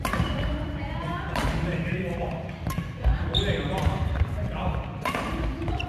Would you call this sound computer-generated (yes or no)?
no